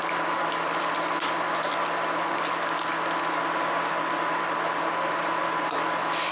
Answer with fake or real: real